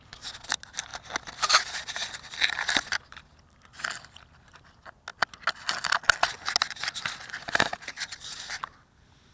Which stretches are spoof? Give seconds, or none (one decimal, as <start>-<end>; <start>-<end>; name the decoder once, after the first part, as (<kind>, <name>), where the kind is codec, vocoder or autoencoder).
none